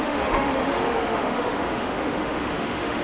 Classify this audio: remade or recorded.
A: remade